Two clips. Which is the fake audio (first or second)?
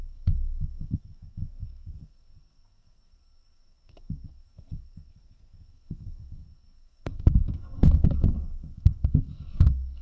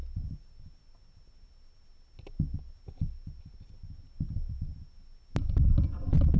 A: first